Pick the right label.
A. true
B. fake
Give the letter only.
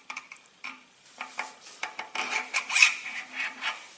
B